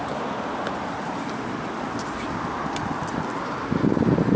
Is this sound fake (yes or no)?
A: no